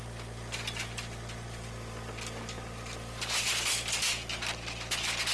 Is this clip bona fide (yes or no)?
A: yes